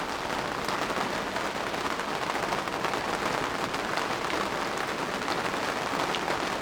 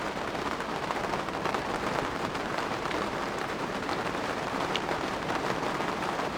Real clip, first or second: first